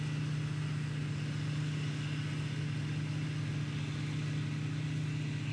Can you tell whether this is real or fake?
real